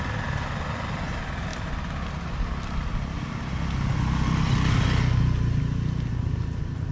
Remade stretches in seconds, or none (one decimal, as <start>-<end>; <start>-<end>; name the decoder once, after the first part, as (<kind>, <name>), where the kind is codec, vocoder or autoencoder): none